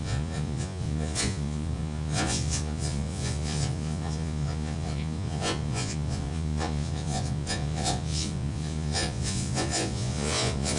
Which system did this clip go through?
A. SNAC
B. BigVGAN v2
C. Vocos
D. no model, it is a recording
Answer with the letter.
C